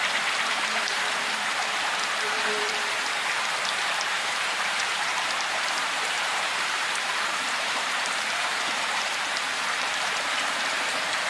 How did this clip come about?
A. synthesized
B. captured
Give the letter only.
A